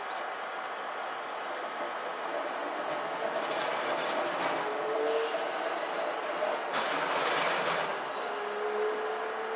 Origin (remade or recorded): recorded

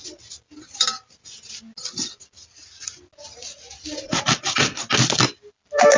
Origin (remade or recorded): recorded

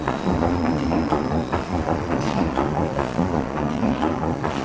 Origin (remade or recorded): remade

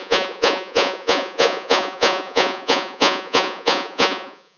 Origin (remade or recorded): remade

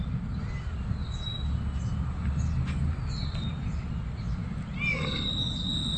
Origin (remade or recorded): recorded